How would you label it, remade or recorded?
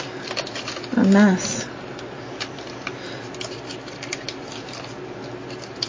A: recorded